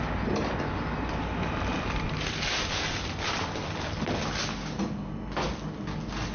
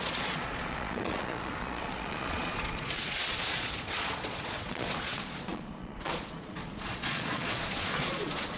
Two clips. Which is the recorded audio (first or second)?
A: first